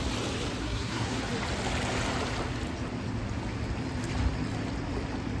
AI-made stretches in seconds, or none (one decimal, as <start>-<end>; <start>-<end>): 0.6-1.2